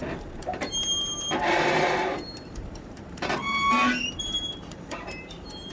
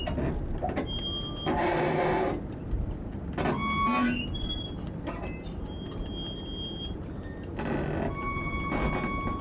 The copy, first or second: first